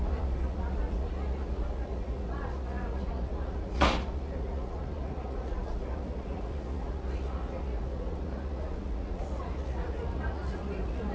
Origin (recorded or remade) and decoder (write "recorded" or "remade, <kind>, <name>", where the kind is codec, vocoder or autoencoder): remade, vocoder, Vocos